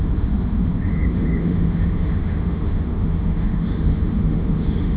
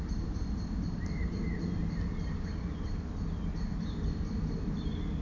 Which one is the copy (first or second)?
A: first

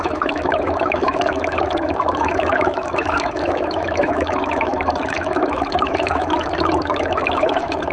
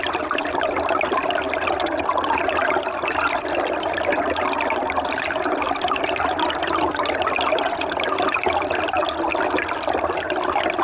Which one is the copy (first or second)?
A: first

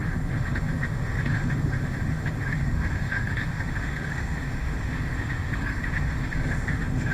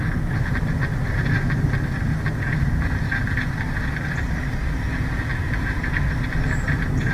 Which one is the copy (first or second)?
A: first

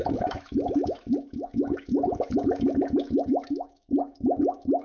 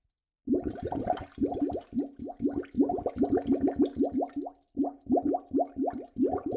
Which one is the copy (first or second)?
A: first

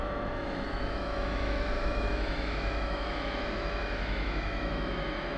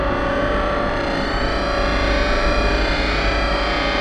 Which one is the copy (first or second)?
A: first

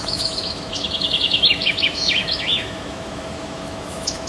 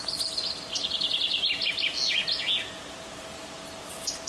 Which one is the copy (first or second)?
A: first